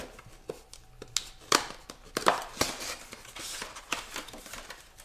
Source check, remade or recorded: recorded